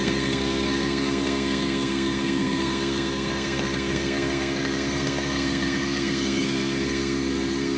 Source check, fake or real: fake